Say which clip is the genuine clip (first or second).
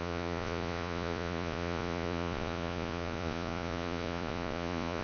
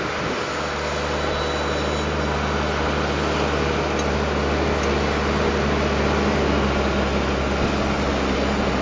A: second